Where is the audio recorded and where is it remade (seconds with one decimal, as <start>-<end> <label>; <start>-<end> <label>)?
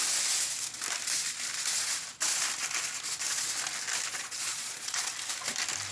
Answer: 0.0-4.1 recorded; 4.1-5.1 remade; 5.1-5.9 recorded